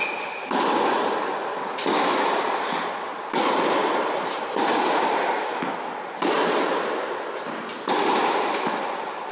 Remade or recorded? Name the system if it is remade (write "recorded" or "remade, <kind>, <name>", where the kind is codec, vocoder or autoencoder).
recorded